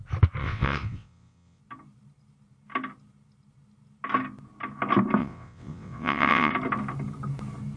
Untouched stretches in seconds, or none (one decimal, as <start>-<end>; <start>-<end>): 0.0-0.4; 1.6-5.2; 6.5-7.8